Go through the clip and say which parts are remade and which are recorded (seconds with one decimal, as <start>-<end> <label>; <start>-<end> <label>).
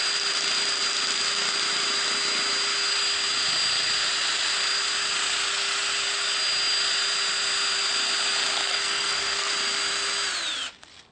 0.0-8.7 recorded; 8.7-9.5 remade; 9.5-11.1 recorded